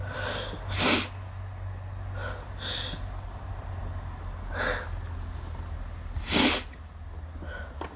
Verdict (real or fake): real